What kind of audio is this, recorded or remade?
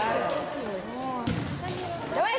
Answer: recorded